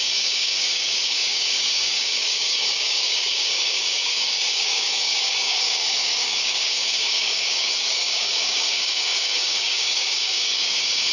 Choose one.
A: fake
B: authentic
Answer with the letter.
A